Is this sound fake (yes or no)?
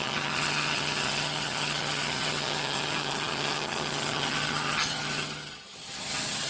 yes